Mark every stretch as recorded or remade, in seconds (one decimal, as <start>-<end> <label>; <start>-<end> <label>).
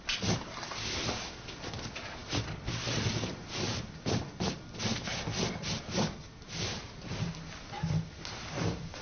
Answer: 0.0-2.2 recorded; 2.2-4.8 remade; 4.8-9.0 recorded